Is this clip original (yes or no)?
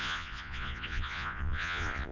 no